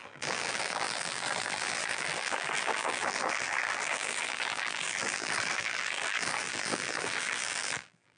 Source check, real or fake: fake